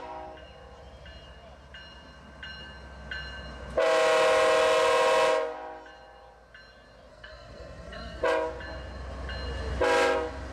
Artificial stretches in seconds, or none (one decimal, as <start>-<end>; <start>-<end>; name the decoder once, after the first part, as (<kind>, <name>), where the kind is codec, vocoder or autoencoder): 7.1-8.2 (codec, SNAC)